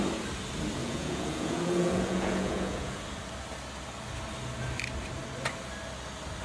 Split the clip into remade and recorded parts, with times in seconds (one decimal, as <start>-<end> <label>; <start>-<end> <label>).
0.0-0.8 recorded; 0.8-3.0 remade; 3.0-6.4 recorded